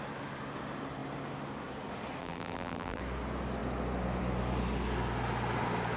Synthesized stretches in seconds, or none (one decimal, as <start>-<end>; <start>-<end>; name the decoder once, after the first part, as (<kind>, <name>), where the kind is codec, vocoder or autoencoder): 2.2-3.0 (vocoder, BigVGAN v2)